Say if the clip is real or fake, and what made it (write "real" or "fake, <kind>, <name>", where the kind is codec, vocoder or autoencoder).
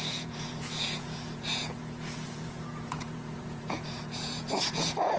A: fake, vocoder, Vocos